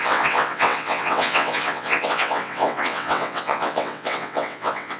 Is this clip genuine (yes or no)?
no